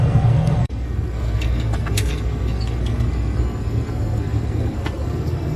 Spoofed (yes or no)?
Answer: yes